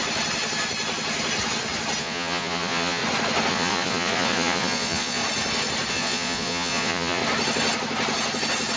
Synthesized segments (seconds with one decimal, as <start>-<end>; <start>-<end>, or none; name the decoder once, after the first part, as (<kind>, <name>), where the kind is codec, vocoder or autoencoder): 2.0-3.0 (vocoder, Vocos); 3.5-5.2; 5.9-7.2